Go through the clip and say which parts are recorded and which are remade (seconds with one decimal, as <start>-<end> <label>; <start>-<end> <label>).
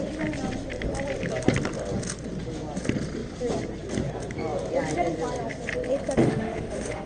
0.0-6.2 recorded; 6.2-7.1 remade